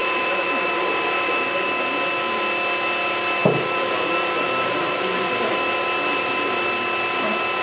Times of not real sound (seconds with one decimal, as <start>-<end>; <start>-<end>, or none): 0.0-1.7; 3.4-5.5; 6.1-6.7